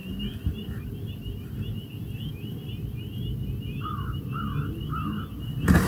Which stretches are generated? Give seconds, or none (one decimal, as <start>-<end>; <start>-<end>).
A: none